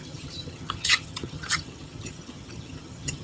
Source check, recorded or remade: remade